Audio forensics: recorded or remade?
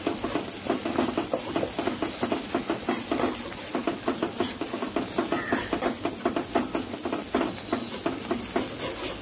recorded